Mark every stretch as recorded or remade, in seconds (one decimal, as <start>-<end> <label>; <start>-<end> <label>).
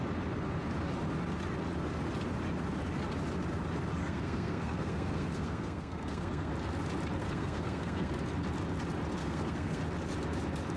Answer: 0.0-4.0 recorded; 4.0-6.5 remade; 6.5-7.2 recorded; 7.2-8.1 remade; 8.1-9.2 recorded; 9.2-9.8 remade; 9.8-10.8 recorded